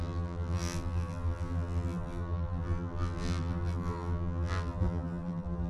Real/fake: fake